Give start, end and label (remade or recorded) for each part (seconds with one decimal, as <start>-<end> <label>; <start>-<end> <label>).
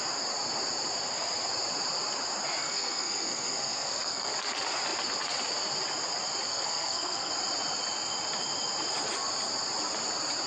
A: 0.0-2.6 recorded; 2.6-4.3 remade; 4.3-6.5 recorded; 6.5-7.3 remade; 7.3-10.5 recorded